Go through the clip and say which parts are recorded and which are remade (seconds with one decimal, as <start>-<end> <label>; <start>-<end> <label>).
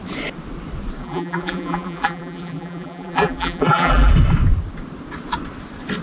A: 0.0-1.0 recorded; 1.0-4.1 remade; 4.1-6.0 recorded